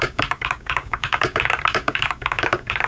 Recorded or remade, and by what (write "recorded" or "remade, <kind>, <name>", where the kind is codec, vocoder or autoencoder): remade, codec, DAC